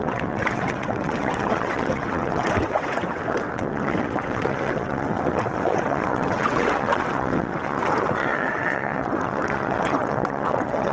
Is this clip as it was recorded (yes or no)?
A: no